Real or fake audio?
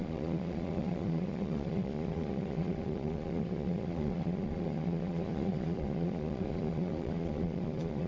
fake